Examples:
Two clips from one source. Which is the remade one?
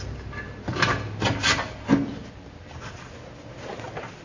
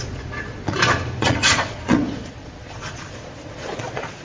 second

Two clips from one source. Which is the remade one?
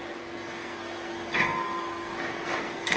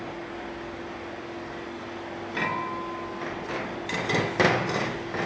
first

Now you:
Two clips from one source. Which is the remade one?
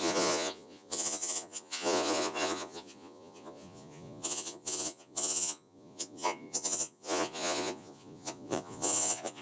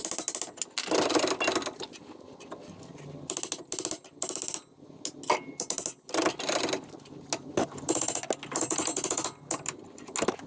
first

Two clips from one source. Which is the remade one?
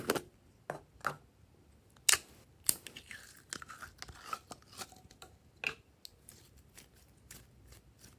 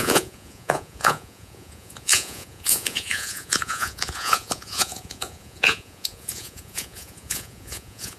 second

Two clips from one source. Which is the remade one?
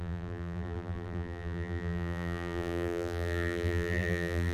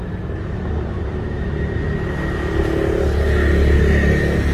first